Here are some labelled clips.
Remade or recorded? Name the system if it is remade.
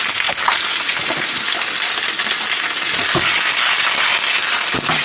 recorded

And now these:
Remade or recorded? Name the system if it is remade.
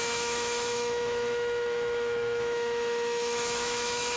remade, autoencoder, DAC-VAE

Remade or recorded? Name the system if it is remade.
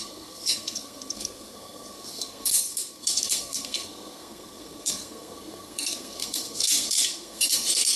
remade, codec, SNAC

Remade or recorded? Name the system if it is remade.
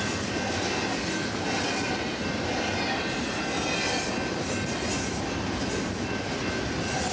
recorded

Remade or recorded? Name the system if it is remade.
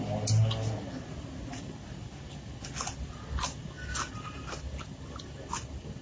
recorded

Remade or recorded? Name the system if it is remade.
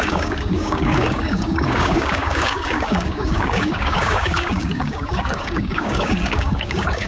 remade, codec, DAC